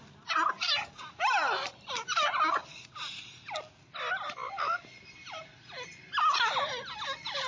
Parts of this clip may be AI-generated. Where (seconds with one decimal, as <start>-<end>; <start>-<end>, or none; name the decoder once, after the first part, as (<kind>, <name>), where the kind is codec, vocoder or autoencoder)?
none